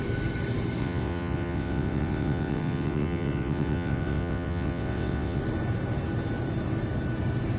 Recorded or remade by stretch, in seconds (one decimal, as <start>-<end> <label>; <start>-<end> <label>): 0.0-0.8 recorded; 0.8-5.4 remade; 5.4-7.6 recorded